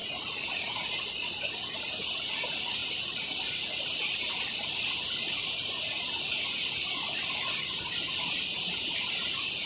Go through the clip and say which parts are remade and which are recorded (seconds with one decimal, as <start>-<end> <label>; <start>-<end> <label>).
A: 0.0-2.3 recorded; 2.3-9.7 remade